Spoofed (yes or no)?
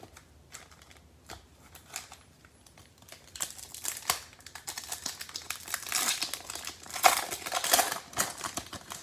no